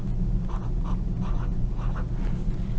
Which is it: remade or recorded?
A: recorded